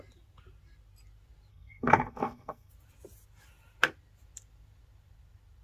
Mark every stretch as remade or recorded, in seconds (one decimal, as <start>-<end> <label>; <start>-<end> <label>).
0.0-1.5 recorded; 1.5-2.7 remade; 2.7-5.6 recorded

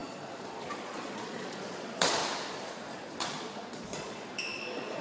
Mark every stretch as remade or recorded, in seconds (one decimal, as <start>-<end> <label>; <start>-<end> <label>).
0.0-2.2 remade; 2.2-3.1 recorded; 3.1-5.0 remade